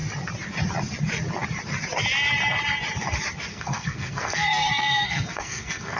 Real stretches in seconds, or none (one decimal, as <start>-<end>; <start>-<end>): 0.0-3.5